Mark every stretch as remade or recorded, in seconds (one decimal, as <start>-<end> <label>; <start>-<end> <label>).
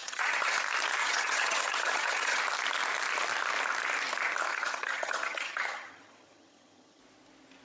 0.0-0.6 remade; 0.6-1.0 recorded; 1.0-2.4 remade; 2.4-4.5 recorded; 4.5-7.0 remade; 7.0-7.6 recorded